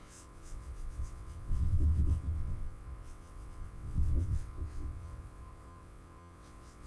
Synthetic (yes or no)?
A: yes